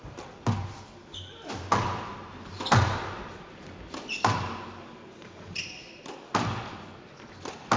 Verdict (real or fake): real